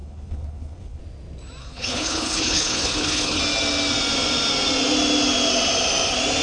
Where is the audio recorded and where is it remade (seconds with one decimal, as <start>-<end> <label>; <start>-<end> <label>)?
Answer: 0.0-1.0 remade; 1.0-1.6 recorded; 1.6-3.4 remade; 3.4-6.4 recorded